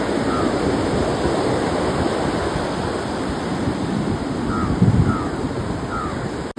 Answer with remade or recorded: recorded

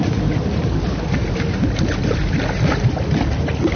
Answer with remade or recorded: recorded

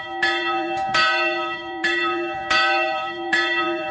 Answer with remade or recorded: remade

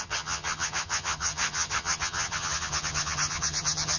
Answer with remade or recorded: remade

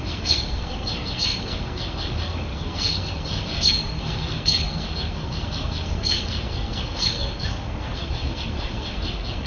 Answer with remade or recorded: remade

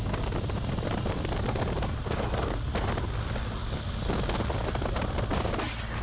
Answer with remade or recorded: recorded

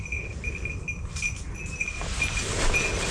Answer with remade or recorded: recorded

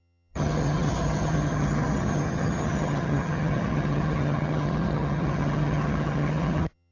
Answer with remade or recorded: remade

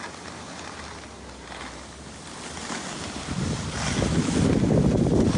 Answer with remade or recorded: recorded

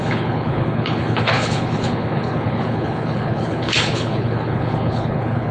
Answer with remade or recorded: remade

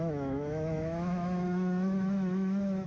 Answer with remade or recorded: remade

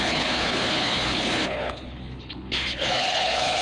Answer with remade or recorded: remade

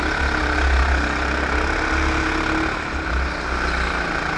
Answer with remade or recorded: recorded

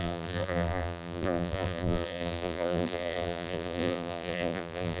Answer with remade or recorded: remade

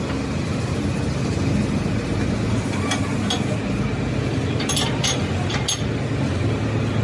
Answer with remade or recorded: recorded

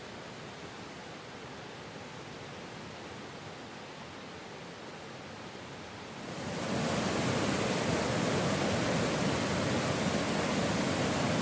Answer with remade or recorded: recorded